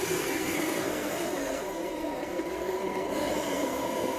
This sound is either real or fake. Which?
fake